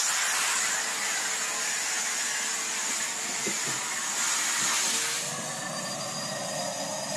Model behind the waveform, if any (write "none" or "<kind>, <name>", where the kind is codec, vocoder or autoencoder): none